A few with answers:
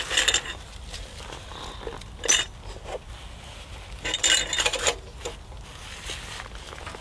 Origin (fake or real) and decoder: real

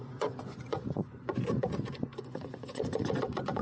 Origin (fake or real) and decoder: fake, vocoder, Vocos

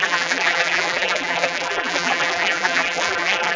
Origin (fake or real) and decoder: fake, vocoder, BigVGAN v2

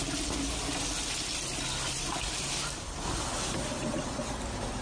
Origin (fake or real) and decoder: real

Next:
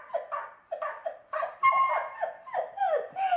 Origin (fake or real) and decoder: real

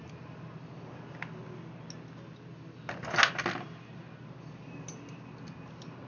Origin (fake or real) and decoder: real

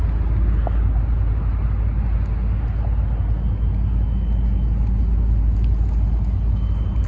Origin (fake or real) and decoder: real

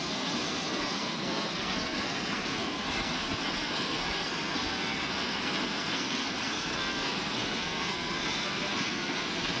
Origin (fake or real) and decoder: fake, codec, SNAC